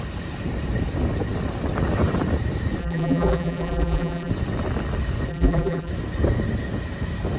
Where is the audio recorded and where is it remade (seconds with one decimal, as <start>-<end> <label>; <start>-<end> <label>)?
0.0-2.8 recorded; 2.8-4.3 remade; 4.3-5.3 recorded; 5.3-5.9 remade; 5.9-7.4 recorded